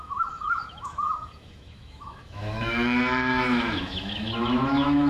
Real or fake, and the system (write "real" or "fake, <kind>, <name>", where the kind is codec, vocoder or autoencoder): fake, autoencoder, DAC-VAE